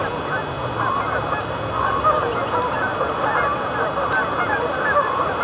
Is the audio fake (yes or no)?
no